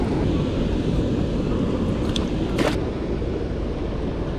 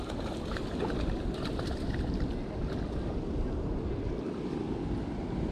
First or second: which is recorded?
first